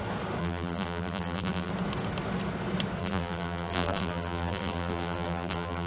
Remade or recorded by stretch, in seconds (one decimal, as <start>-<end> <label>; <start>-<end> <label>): 0.0-0.4 recorded; 0.4-1.7 remade; 1.7-3.0 recorded; 3.0-5.9 remade